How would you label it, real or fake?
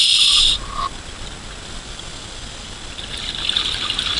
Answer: real